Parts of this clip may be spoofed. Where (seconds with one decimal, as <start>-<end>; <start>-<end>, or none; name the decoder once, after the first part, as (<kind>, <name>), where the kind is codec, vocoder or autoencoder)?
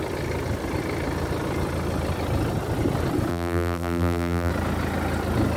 3.3-4.5 (vocoder, BigVGAN v2)